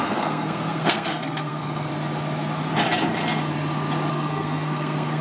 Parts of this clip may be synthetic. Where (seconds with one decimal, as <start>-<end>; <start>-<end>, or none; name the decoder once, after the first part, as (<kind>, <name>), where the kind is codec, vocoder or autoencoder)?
0.0-1.9 (codec, SNAC); 4.1-5.2